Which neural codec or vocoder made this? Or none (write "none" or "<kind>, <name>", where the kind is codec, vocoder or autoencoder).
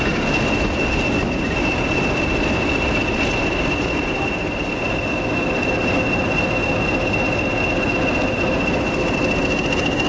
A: none